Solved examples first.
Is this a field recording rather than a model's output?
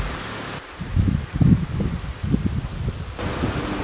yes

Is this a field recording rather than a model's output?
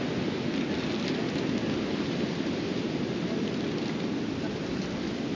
yes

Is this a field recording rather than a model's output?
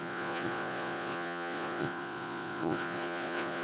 no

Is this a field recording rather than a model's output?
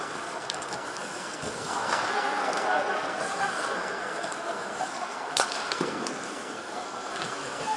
no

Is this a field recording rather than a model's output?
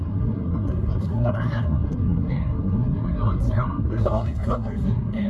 no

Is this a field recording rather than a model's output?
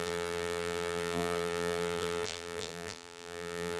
no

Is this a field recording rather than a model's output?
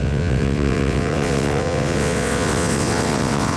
no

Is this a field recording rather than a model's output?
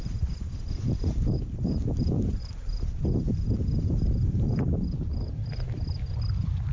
yes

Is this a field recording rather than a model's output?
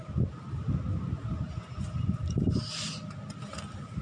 yes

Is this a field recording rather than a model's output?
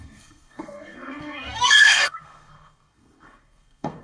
no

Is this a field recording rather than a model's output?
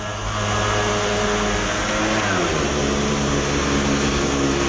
yes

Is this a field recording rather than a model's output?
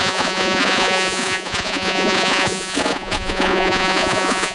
no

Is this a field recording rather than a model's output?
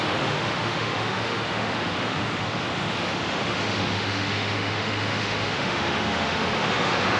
no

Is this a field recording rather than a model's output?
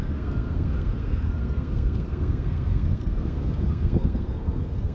no